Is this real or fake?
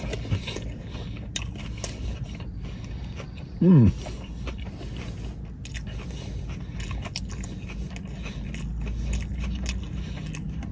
real